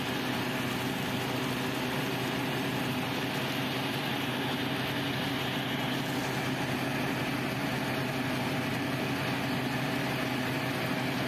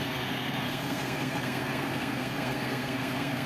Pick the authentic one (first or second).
first